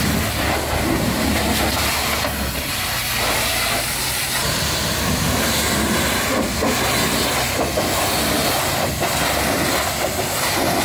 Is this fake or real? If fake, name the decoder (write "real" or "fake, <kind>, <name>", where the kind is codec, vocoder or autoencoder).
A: real